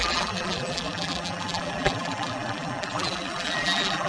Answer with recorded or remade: remade